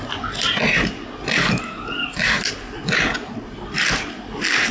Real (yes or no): yes